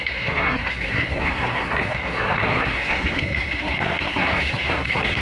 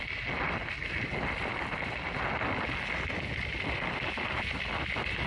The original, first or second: second